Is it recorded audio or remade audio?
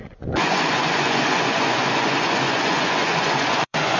remade